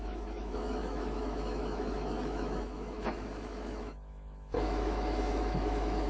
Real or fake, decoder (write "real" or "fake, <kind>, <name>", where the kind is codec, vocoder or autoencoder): fake, autoencoder, DAC-VAE